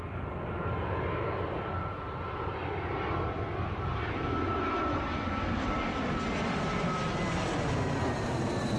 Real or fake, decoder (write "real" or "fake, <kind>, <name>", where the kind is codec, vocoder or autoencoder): real